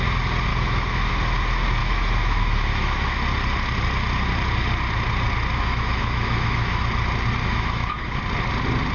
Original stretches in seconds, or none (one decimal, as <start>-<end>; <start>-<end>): 0.0-0.5; 1.1-1.8; 3.2-5.5; 6.8-7.4; 8.2-8.9